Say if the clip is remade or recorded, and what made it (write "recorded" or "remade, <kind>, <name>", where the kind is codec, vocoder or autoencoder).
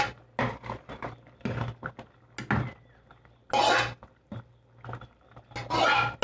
recorded